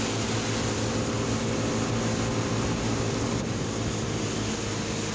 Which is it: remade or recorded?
recorded